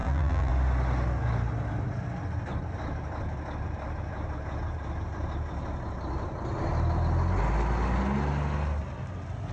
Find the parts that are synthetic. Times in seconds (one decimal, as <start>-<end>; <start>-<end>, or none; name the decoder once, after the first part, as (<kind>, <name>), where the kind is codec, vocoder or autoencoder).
0.0-0.5 (vocoder, BigVGAN v2)